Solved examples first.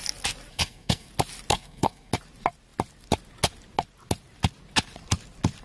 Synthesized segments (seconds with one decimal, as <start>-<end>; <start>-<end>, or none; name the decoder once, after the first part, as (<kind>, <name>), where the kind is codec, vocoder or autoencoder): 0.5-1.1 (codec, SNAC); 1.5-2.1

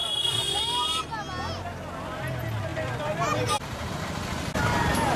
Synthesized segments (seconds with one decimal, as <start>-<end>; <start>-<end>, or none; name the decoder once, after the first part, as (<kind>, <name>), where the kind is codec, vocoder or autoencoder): 0.0-0.6 (vocoder, BigVGAN v2); 2.7-3.9

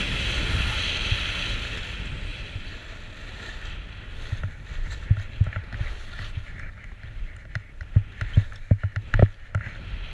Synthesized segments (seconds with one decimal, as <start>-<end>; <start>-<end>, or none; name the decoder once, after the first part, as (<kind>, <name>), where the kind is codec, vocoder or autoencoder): 2.3-3.8 (vocoder, BigVGAN v2)